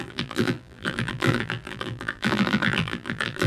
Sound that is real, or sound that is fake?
fake